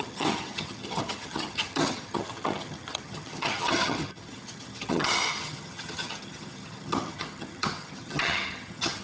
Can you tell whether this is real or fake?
fake